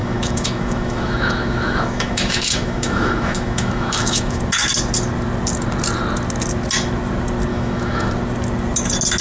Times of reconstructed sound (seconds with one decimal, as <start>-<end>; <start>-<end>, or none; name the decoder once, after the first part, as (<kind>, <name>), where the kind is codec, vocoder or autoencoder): 0.0-4.4 (autoencoder, DAC-VAE); 7.5-8.1